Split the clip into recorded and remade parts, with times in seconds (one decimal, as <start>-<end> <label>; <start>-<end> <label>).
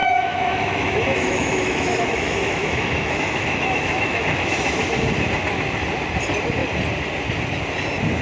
0.0-4.4 remade; 4.4-8.2 recorded